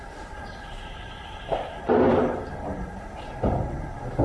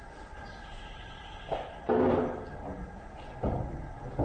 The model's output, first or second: first